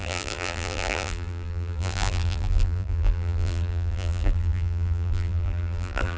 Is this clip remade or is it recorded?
remade